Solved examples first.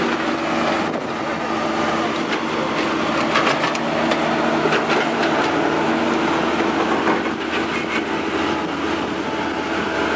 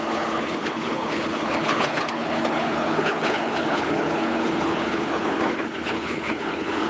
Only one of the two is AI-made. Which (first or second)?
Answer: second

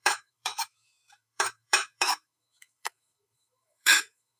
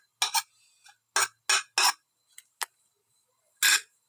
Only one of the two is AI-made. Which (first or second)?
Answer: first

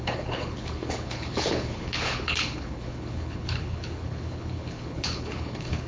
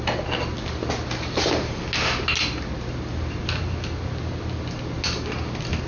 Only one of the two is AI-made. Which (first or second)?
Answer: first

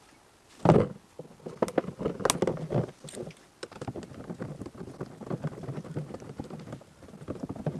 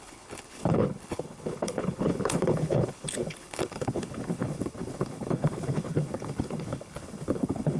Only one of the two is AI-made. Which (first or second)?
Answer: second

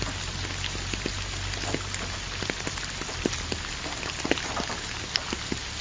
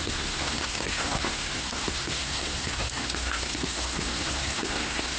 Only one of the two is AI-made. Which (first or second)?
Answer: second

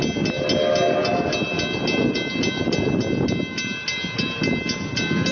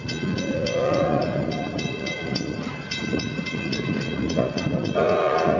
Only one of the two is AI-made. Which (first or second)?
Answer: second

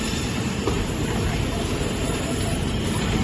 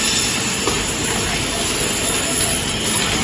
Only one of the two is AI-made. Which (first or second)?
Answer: first